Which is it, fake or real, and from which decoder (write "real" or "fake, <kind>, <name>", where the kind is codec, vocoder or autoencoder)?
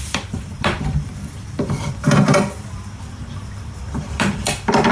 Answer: fake, vocoder, BigVGAN v2